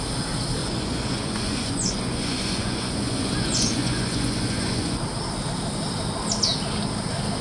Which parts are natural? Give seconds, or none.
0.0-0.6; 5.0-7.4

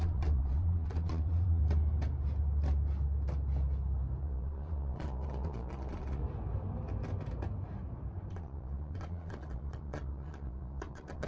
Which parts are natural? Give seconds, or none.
1.6-4.2; 6.2-8.3

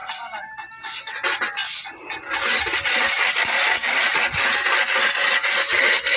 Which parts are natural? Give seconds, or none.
0.0-6.2